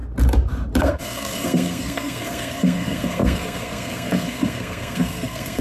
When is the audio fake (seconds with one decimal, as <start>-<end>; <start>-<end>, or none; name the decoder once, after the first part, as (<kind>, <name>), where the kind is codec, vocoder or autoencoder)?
0.8-5.6 (codec, SNAC)